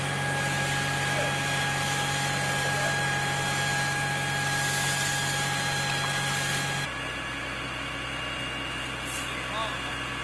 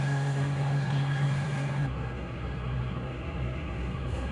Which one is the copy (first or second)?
second